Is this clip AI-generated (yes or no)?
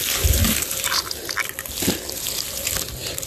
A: no